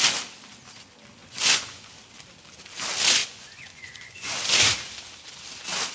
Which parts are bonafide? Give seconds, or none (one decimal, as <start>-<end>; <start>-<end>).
0.0-1.2; 1.9-3.2; 4.4-5.9